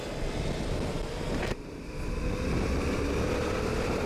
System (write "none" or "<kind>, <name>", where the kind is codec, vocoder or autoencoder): vocoder, BigVGAN v2